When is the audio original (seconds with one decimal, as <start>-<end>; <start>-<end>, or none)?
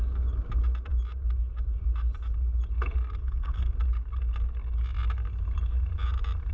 0.0-3.2; 3.7-6.5